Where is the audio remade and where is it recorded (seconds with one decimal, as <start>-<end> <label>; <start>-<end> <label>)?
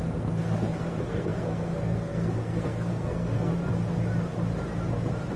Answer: 0.0-3.5 remade; 3.5-5.4 recorded